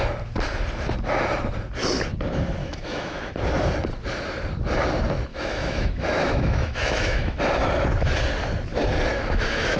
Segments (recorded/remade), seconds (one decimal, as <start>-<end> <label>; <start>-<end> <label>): 0.0-2.6 recorded; 2.6-3.3 remade; 3.3-5.3 recorded; 5.3-7.4 remade; 7.4-9.1 recorded; 9.1-9.8 remade